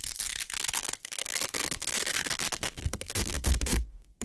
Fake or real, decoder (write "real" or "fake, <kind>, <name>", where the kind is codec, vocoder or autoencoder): fake, codec, SNAC